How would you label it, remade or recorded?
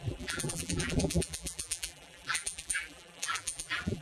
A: remade